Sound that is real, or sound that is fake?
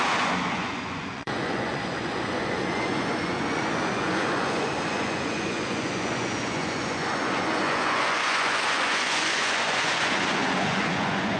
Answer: fake